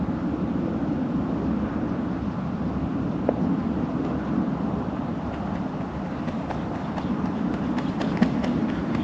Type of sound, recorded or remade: recorded